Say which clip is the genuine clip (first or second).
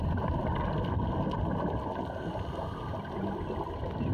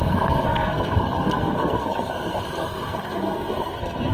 first